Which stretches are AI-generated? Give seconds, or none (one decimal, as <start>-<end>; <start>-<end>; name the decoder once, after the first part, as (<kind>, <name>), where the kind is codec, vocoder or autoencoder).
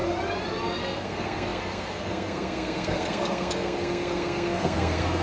0.8-5.2 (codec, SNAC)